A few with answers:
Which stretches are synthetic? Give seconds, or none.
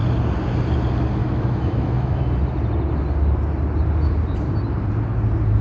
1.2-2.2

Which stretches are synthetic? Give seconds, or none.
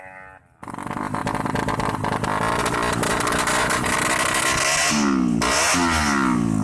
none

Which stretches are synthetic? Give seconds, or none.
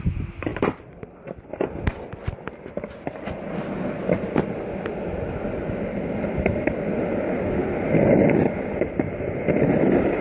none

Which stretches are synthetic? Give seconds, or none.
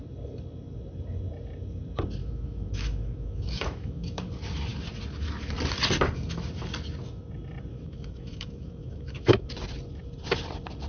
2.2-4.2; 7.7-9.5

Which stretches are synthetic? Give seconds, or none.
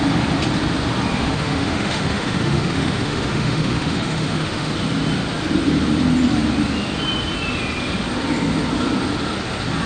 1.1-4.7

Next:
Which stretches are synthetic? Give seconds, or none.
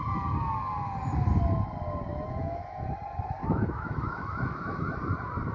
2.1-2.9; 3.4-4.9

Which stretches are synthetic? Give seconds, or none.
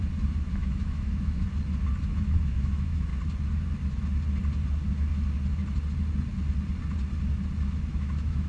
0.5-1.4; 2.0-3.1; 7.9-8.5